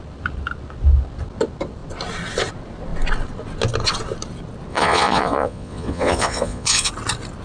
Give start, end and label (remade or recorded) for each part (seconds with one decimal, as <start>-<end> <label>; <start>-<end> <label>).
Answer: 0.0-4.7 recorded; 4.7-6.9 remade; 6.9-7.4 recorded